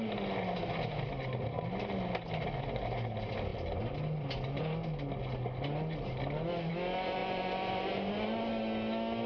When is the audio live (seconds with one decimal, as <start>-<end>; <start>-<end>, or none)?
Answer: 0.0-9.3